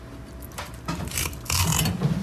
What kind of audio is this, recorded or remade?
recorded